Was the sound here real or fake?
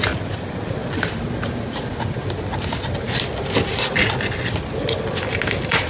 real